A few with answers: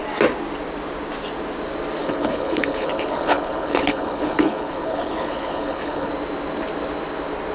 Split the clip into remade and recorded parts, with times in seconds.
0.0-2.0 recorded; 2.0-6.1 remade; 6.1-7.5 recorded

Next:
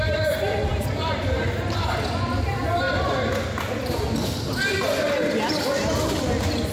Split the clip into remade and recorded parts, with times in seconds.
0.0-6.7 recorded

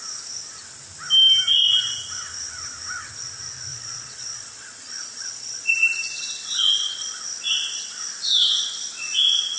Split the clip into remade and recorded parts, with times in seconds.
0.0-3.7 recorded; 3.7-7.2 remade; 7.2-9.6 recorded

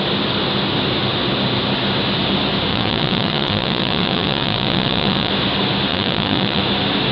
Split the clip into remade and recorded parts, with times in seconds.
0.0-2.7 recorded; 2.7-5.3 remade; 5.3-5.9 recorded; 5.9-6.6 remade; 6.6-7.1 recorded

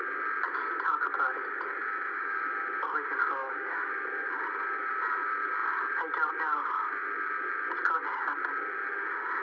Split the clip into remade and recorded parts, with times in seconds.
0.0-1.8 recorded; 1.8-2.4 remade; 2.4-3.4 recorded; 3.4-3.9 remade; 3.9-9.4 recorded

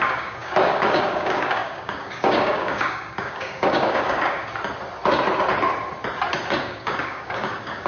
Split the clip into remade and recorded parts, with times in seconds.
0.0-4.4 remade; 4.4-6.6 recorded; 6.6-7.9 remade

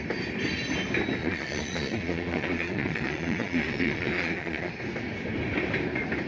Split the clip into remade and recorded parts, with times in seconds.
0.0-1.2 recorded; 1.2-4.7 remade; 4.7-6.3 recorded